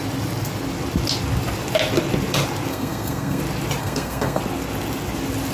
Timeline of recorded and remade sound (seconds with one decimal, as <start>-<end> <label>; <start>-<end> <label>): 0.0-2.7 recorded; 2.7-3.4 remade; 3.4-3.8 recorded; 3.8-4.4 remade; 4.4-5.5 recorded